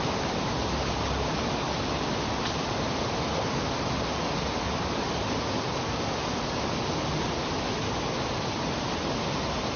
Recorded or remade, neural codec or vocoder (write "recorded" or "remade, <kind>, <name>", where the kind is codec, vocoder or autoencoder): recorded